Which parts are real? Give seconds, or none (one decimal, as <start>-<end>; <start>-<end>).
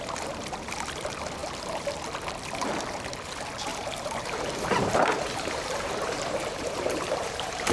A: 0.0-1.4; 1.9-3.7